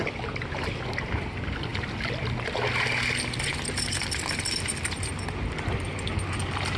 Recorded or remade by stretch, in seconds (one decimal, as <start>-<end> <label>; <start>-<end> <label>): 0.0-6.8 recorded